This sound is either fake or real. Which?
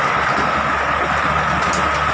real